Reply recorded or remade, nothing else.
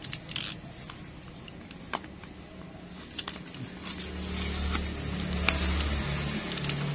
recorded